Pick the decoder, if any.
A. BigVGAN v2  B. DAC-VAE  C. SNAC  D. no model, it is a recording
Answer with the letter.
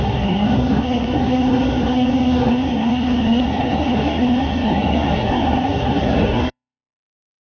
C